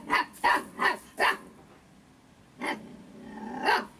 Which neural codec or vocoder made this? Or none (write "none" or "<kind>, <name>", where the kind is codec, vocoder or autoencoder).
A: none